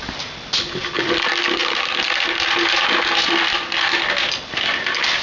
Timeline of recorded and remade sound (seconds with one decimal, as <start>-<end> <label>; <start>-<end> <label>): 0.0-5.2 recorded